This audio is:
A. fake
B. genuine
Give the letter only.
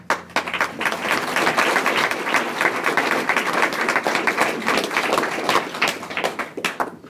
B